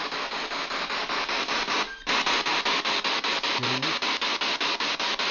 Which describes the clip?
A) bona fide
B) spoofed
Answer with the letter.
A